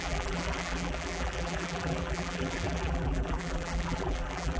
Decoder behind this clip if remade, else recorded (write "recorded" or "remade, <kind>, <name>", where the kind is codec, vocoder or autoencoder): remade, vocoder, BigVGAN v2